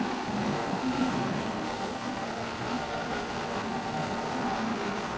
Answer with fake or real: fake